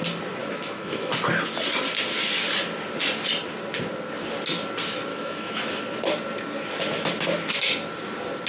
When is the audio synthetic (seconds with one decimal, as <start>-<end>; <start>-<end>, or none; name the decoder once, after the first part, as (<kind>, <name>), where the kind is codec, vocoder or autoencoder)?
0.4-1.1 (autoencoder, DAC-VAE); 5.1-5.8